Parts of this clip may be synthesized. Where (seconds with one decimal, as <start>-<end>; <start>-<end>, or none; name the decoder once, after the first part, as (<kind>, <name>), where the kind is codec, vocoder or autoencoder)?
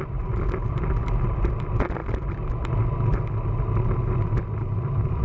none